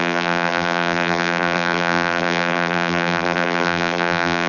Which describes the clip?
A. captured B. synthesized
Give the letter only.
B